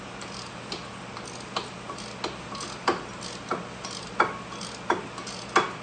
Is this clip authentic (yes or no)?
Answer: yes